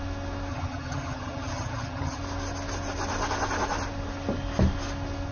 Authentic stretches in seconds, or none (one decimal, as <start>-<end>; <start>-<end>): 0.0-0.5; 2.2-5.3